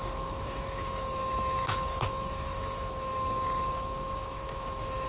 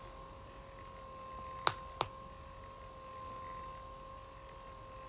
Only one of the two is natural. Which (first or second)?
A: second